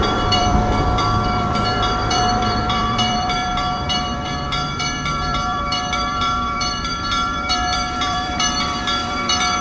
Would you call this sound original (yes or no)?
no